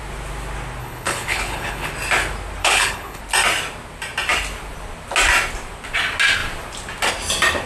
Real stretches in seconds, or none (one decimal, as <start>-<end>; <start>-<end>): 0.0-0.8; 1.9-2.6; 3.2-7.7